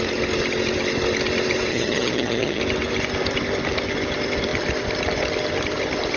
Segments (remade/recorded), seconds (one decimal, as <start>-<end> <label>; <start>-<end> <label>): 0.0-1.7 recorded; 1.7-2.6 remade; 2.6-6.2 recorded